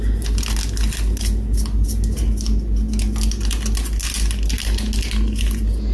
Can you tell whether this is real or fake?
real